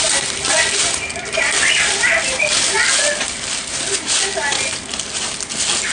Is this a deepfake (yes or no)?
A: yes